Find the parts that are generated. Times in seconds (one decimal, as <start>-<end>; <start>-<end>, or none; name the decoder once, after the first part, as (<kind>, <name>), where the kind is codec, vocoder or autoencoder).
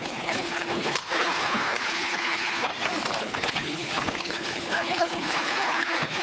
0.0-2.7 (codec, HILCodec); 3.2-6.2